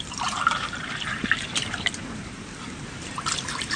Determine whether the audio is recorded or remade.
remade